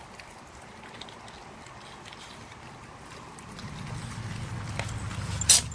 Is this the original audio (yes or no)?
yes